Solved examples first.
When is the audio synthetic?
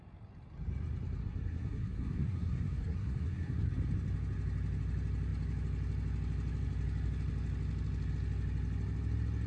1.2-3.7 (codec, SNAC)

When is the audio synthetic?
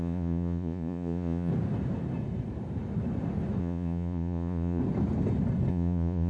0.0-1.5 (vocoder, Vocos); 3.6-4.8; 5.7-6.3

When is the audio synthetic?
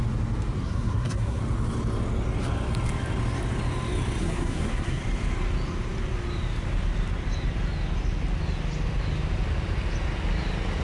0.6-1.4 (codec, SNAC); 4.2-5.0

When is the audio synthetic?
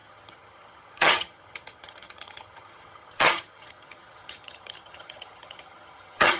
0.0-6.4 (vocoder, HiFi-GAN)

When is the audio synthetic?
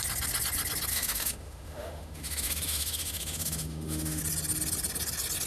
0.9-4.2 (autoencoder, DAC-VAE)